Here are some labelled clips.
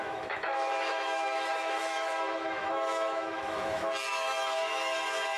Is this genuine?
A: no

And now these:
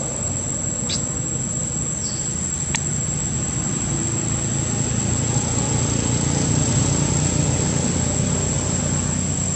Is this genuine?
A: yes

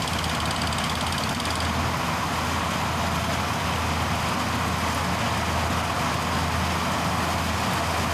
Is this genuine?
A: yes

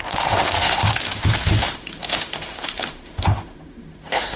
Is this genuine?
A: no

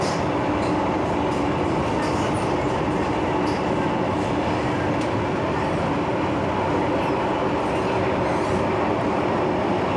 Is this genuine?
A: yes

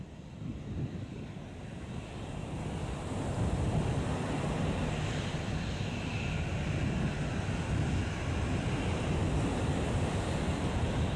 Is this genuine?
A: yes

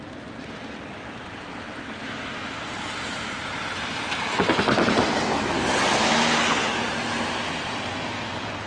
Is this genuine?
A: yes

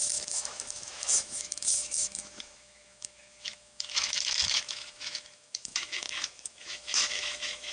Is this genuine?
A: no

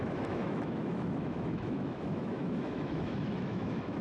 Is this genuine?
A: no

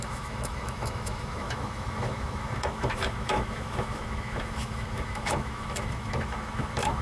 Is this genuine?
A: no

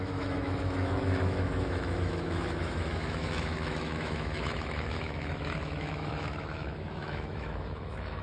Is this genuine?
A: no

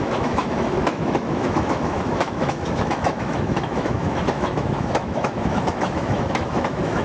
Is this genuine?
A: no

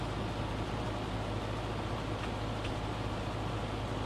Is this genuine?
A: yes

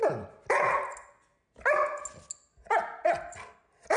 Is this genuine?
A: yes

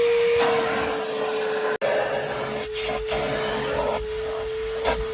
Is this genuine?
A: yes